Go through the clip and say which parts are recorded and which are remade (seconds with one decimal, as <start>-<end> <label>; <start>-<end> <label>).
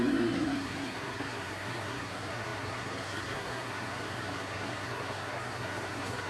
0.0-6.3 remade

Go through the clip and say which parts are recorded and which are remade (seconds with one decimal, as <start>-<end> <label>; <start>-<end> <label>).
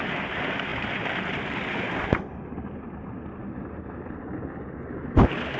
0.0-5.6 recorded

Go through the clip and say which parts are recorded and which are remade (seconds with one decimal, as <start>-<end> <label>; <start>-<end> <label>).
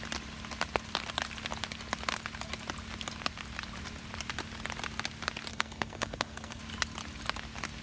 0.0-5.5 recorded; 5.5-6.6 remade; 6.6-7.8 recorded